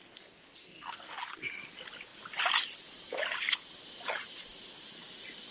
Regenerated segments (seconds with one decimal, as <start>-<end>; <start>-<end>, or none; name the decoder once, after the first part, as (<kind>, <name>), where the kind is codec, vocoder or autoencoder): 0.6-1.1 (codec, SNAC)